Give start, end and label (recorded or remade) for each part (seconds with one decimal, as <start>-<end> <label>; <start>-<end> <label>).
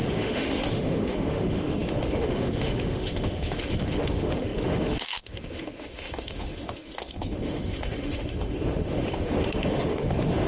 0.0-10.5 remade